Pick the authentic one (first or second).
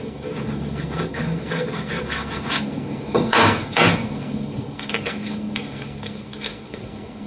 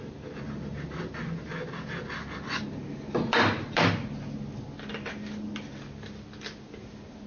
second